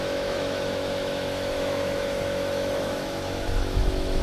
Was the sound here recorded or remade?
remade